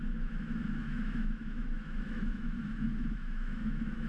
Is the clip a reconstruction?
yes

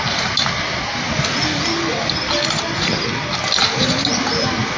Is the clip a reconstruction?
no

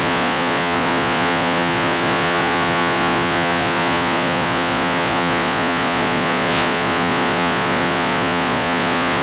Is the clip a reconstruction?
yes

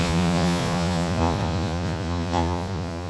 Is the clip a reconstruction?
yes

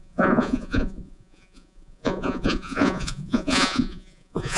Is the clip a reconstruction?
yes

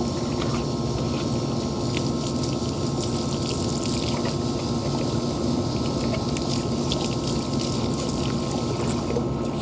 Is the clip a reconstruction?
no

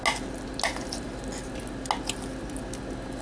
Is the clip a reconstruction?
no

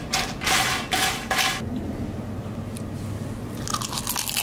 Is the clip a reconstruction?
no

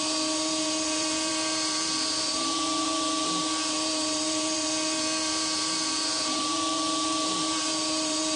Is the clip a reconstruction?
yes